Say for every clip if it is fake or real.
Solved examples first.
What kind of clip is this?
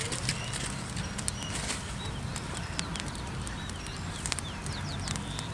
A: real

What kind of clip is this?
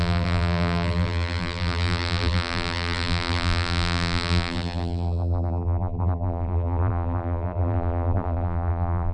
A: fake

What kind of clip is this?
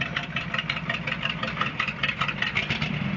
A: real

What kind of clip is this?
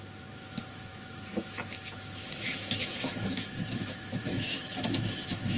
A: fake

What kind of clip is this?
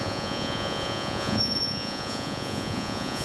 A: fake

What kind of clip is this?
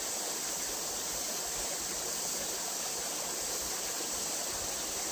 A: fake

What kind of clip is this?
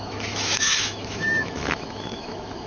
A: fake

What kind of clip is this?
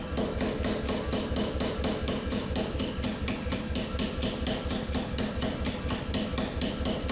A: real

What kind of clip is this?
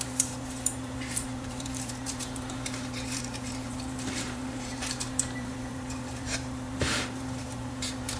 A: fake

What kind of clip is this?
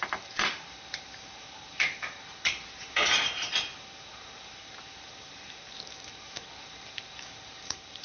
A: fake